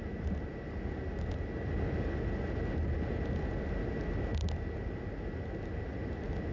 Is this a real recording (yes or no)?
yes